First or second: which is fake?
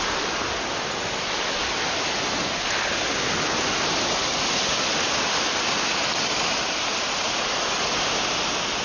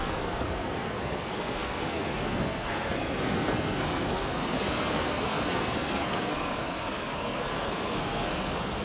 second